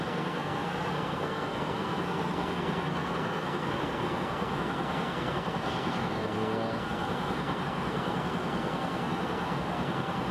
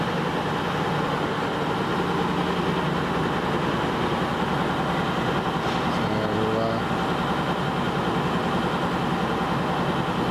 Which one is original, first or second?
second